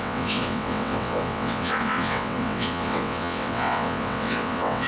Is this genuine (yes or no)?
no